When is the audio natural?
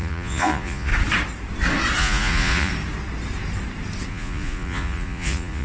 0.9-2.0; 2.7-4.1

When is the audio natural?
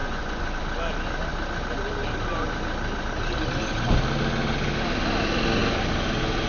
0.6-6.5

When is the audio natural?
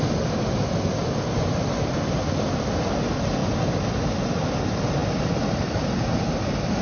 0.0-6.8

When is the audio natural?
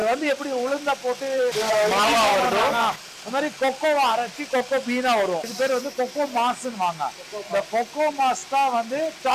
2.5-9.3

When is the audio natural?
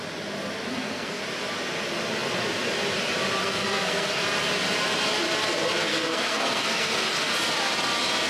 0.0-0.7; 1.2-3.4; 4.2-5.9; 7.3-8.3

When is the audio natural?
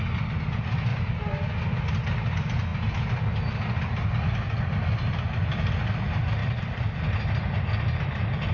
0.0-0.9; 1.9-6.4; 7.1-8.5